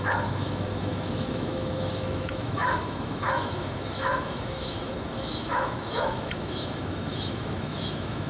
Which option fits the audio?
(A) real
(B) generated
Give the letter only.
B